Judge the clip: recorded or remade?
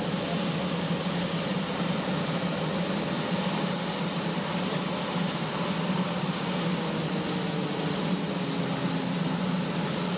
recorded